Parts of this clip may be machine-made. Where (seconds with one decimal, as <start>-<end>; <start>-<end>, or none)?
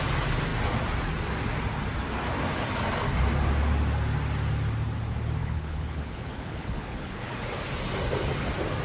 5.4-7.3